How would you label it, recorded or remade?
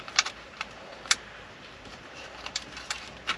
remade